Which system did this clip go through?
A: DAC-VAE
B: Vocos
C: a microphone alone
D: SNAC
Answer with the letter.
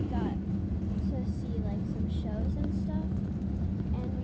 C